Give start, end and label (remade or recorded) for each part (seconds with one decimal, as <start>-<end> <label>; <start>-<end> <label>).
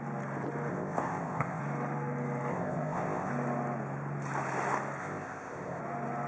0.0-0.7 recorded; 0.7-1.6 remade; 1.6-2.5 recorded; 2.5-3.3 remade; 3.3-5.0 recorded; 5.0-5.8 remade; 5.8-6.3 recorded